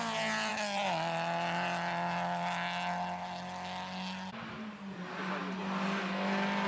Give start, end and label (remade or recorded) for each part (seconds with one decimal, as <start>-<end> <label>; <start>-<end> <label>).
0.0-6.7 recorded